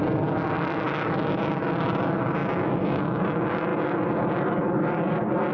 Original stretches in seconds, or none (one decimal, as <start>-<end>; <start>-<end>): 0.0-5.5